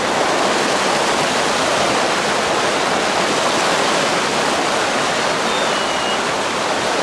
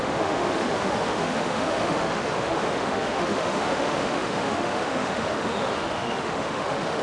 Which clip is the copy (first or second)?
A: second